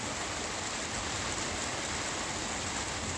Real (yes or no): yes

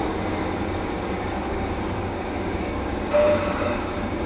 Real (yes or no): no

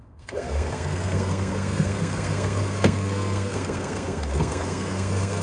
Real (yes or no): no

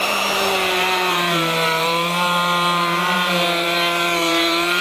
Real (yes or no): no